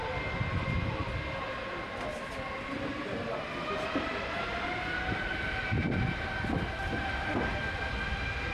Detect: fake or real real